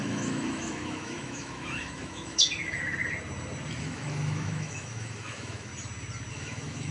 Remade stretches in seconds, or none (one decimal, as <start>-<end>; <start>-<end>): 0.0-2.5; 3.8-5.7; 6.3-6.9